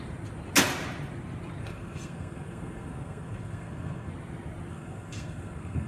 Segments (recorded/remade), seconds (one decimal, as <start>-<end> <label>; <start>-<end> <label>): 0.0-1.6 recorded; 1.6-4.1 remade; 4.1-4.7 recorded; 4.7-5.9 remade